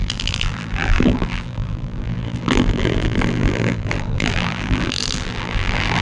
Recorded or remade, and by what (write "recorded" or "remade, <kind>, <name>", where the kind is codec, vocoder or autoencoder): remade, vocoder, BigVGAN v2